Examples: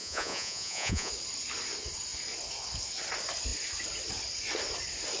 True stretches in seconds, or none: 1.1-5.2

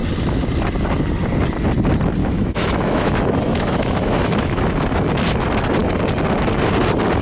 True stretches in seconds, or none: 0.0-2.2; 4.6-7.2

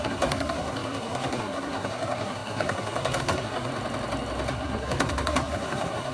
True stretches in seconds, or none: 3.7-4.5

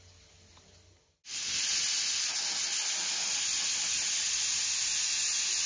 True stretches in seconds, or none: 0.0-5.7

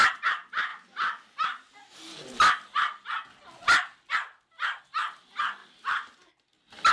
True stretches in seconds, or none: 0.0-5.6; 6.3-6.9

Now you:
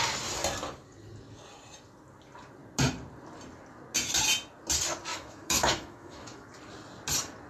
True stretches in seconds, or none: 0.0-5.1; 6.5-7.5

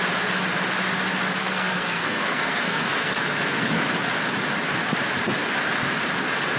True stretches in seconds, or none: 0.0-1.4; 3.8-6.6